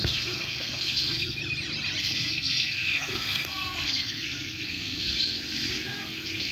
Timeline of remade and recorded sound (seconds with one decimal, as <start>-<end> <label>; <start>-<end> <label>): 0.0-1.4 remade; 1.4-2.0 recorded; 2.0-6.5 remade

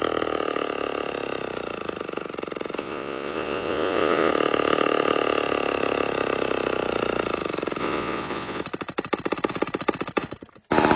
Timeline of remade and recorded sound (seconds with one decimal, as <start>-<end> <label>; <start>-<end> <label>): 0.0-2.8 recorded; 2.8-4.3 remade; 4.3-7.8 recorded; 7.8-8.6 remade; 8.6-11.0 recorded

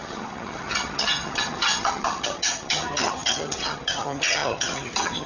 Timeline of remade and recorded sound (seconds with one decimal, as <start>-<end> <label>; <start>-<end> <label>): 0.0-5.3 remade

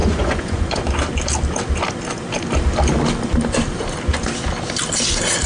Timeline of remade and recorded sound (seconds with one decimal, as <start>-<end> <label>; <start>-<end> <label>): 0.0-0.8 remade; 0.8-5.5 recorded

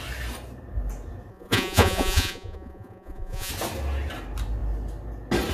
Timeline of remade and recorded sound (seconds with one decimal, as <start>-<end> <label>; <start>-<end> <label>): 0.0-1.3 recorded; 1.3-3.5 remade; 3.5-5.5 recorded